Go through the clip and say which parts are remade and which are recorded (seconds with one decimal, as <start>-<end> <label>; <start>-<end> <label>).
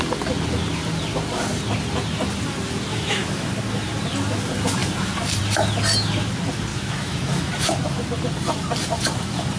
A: 0.0-2.9 recorded; 2.9-3.5 remade; 3.5-6.7 recorded; 6.7-7.5 remade; 7.5-9.6 recorded